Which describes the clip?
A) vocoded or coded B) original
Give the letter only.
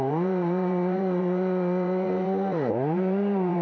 A